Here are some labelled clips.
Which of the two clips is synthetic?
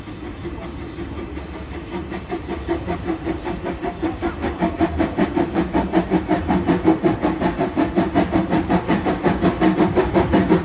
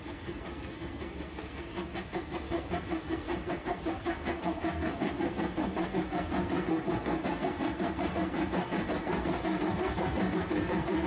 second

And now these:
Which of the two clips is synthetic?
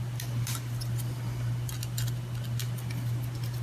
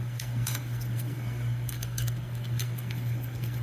second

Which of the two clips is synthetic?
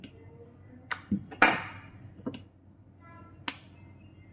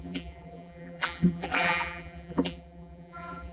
second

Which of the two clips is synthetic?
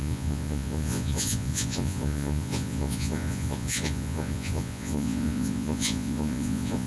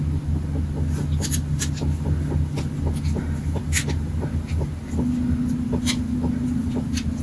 first